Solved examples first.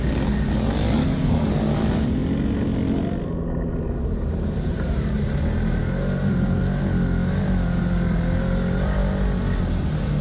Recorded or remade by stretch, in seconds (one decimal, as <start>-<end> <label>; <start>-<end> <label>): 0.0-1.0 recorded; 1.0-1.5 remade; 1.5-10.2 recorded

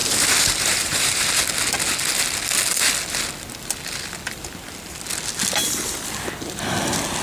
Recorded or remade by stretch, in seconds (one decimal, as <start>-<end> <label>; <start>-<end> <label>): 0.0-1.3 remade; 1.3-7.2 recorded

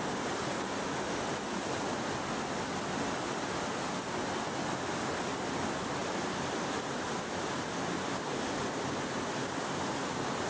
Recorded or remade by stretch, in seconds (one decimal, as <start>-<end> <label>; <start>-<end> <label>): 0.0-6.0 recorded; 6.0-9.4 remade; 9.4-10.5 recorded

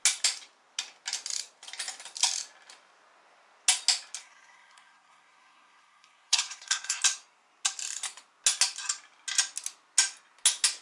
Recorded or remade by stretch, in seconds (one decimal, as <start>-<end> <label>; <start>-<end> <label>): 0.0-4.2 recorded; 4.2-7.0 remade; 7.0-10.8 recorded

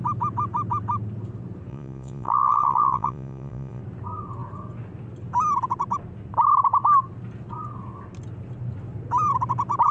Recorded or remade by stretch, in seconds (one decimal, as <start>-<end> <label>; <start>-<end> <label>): 0.0-1.7 recorded; 1.7-3.8 remade; 3.8-9.9 recorded